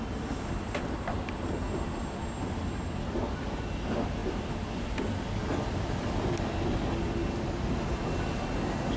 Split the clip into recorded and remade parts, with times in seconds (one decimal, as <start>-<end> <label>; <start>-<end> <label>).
0.0-9.0 recorded

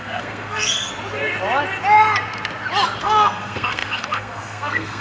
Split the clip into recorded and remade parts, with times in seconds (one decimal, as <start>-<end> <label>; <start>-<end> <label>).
0.0-0.9 remade; 0.9-3.0 recorded; 3.0-5.0 remade

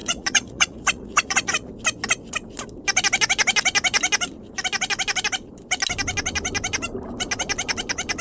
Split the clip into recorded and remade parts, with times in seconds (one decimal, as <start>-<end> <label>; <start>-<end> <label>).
0.0-1.7 remade; 1.7-8.2 recorded

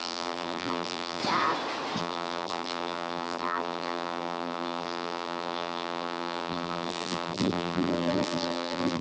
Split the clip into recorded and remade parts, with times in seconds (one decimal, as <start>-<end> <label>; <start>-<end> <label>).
0.0-1.2 remade; 1.2-2.0 recorded; 2.0-9.0 remade

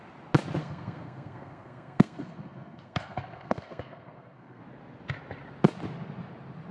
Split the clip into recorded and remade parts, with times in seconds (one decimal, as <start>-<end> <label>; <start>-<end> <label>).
0.0-0.6 recorded; 0.6-4.6 remade; 4.6-6.7 recorded

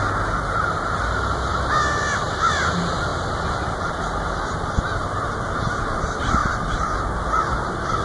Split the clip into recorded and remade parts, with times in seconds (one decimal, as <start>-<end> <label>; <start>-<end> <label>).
0.0-6.4 recorded; 6.4-7.0 remade; 7.0-8.0 recorded